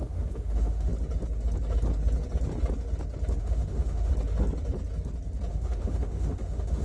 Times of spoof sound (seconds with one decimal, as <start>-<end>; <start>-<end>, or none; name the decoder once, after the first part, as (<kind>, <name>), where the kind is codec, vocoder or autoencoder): 0.0-0.9 (autoencoder, DAC-VAE); 3.4-4.1; 5.5-6.8